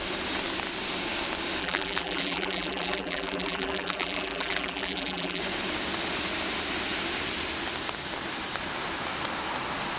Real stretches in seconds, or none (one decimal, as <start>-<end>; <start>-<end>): 0.0-1.6; 5.4-10.0